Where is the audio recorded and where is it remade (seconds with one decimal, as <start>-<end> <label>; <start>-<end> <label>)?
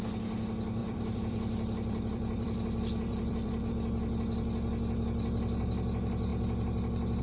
0.0-0.8 recorded; 0.8-3.7 remade; 3.7-7.2 recorded